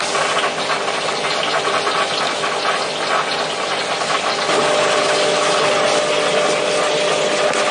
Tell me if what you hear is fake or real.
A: real